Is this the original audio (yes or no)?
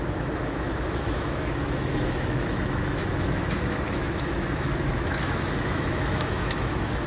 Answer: no